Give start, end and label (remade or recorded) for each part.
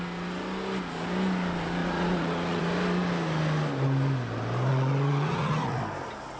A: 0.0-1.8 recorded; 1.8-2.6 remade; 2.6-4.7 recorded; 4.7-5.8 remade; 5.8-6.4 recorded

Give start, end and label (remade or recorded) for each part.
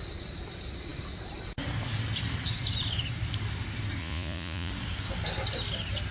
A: 0.0-4.0 recorded; 4.0-4.7 remade; 4.7-6.1 recorded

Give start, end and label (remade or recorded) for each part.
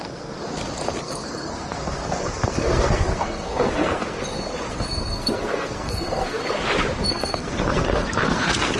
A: 0.0-0.4 remade; 0.4-1.0 recorded; 1.0-4.2 remade; 4.2-4.7 recorded; 4.7-6.4 remade; 6.4-7.1 recorded; 7.1-8.8 remade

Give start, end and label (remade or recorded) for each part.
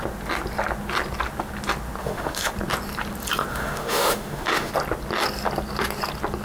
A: 0.0-2.0 recorded; 2.0-2.5 remade; 2.5-3.5 recorded; 3.5-4.7 remade; 4.7-6.4 recorded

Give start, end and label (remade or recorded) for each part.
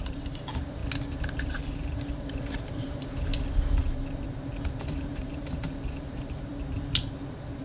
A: 0.0-0.8 remade; 0.8-1.4 recorded; 1.4-3.3 remade; 3.3-4.8 recorded; 4.8-6.5 remade; 6.5-7.6 recorded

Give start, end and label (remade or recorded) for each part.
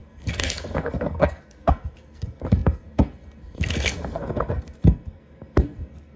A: 0.0-6.2 remade